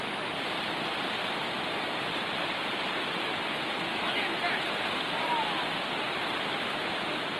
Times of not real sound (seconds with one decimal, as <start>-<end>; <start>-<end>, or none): 3.9-4.4

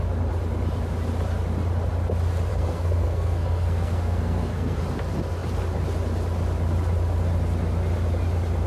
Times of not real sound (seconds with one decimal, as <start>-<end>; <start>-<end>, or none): 2.5-4.8